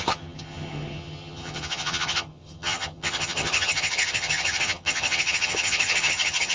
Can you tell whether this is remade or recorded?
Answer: remade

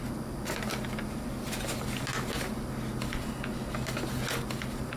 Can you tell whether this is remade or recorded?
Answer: recorded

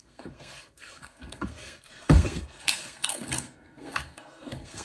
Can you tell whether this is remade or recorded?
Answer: remade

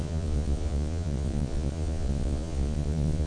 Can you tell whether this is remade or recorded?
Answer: remade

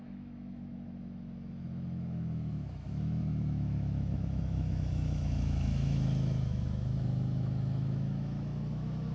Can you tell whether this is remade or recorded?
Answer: remade